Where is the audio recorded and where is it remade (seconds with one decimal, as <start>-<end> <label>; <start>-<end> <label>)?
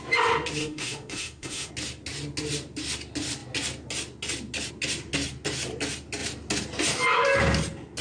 0.0-0.6 recorded; 0.6-1.7 remade; 1.7-8.0 recorded